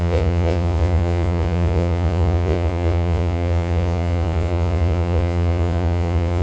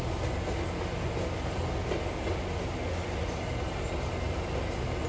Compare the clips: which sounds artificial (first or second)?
first